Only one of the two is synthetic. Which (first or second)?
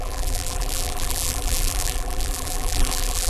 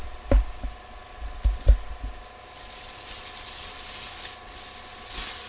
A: first